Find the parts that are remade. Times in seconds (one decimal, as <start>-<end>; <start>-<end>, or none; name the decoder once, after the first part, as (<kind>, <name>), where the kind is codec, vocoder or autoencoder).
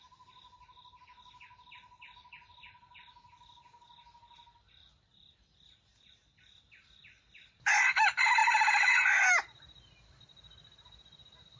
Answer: none